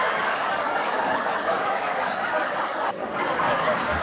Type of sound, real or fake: fake